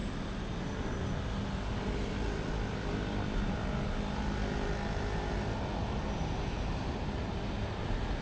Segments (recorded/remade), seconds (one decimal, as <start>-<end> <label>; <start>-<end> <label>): 0.0-8.2 recorded